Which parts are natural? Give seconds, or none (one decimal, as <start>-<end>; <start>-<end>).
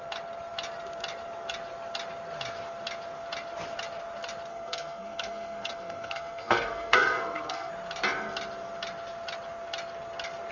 0.0-4.5; 7.7-10.5